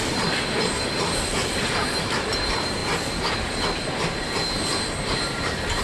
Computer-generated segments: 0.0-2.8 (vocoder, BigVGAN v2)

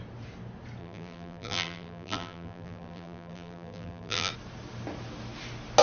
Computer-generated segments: 0.8-4.3 (vocoder, BigVGAN v2)

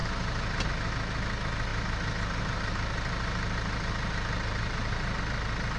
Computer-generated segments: 0.0-0.7 (vocoder, BigVGAN v2); 1.7-5.2

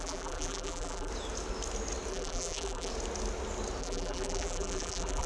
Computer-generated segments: 0.0-1.1 (vocoder, BigVGAN v2); 2.1-2.9; 3.8-5.3

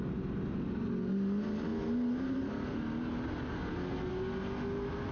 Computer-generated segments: none

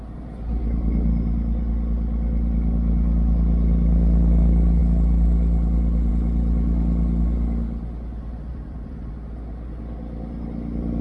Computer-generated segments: 8.5-9.1 (vocoder, BigVGAN v2)

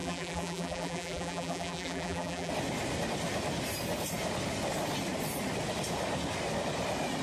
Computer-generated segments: 0.0-2.5 (vocoder, BigVGAN v2)